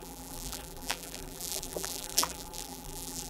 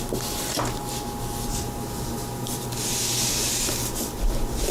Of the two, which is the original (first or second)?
second